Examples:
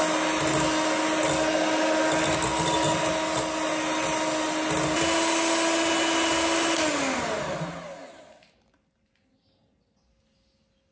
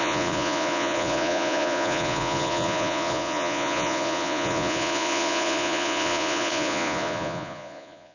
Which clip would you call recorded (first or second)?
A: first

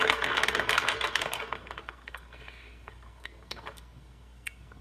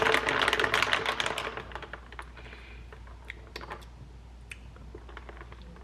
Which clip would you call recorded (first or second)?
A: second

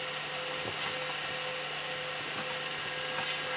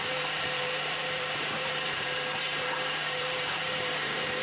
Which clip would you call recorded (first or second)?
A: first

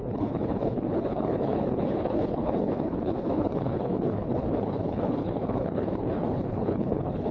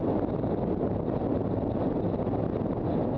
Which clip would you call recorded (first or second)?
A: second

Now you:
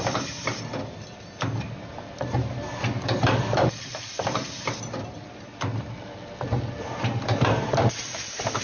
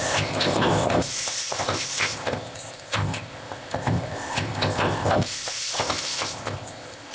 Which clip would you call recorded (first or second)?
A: first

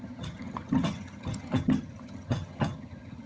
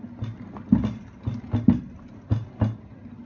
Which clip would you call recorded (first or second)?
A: second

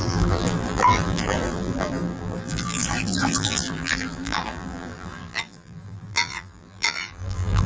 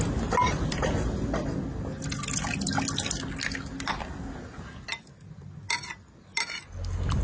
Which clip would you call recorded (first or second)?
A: second